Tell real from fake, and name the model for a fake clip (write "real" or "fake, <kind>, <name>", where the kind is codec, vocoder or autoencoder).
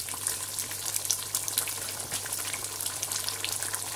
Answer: fake, vocoder, BigVGAN v2